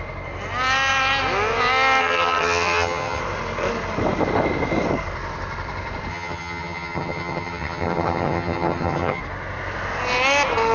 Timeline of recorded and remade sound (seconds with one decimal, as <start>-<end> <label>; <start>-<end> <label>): 0.0-2.0 recorded; 2.0-3.2 remade; 3.2-6.1 recorded; 6.1-9.2 remade; 9.2-10.7 recorded